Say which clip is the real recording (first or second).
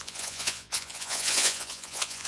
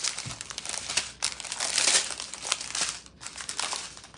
second